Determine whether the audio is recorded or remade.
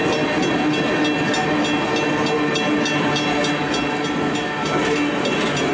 recorded